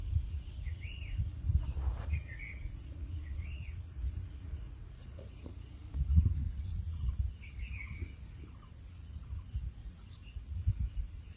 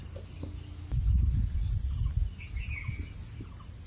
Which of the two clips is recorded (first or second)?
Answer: second